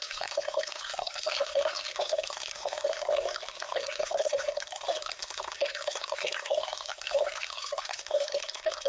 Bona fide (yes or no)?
no